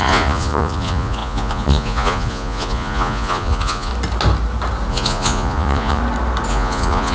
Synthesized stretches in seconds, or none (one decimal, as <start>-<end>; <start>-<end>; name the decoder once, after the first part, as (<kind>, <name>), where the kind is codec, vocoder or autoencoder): 0.0-3.9 (vocoder, Vocos); 4.9-6.0; 6.5-7.1